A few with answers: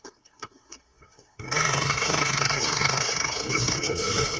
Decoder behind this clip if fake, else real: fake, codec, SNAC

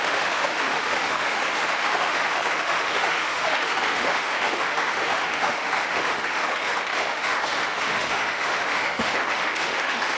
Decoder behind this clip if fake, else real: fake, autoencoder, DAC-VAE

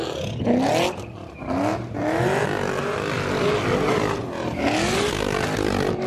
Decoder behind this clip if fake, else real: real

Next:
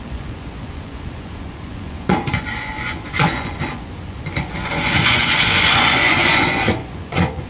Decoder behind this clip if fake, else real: fake, vocoder, Vocos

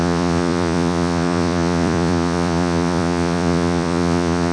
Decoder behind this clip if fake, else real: fake, vocoder, Vocos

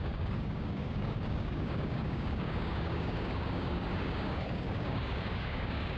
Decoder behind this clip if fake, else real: fake, codec, DAC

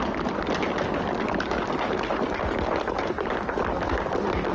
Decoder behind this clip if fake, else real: real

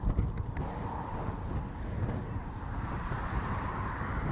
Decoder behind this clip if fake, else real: real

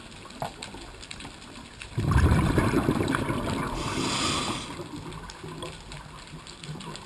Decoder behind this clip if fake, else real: real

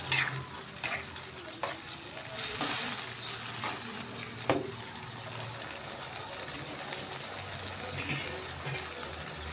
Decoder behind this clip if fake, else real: real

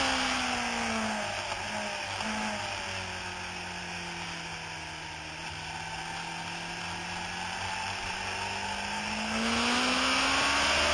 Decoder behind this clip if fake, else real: real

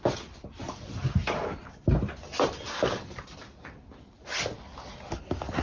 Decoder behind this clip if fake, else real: real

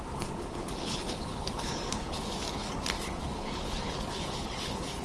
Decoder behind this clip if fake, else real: fake, codec, HILCodec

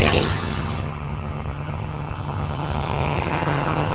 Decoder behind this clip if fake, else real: fake, vocoder, HiFi-GAN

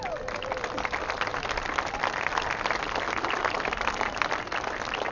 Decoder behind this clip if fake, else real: real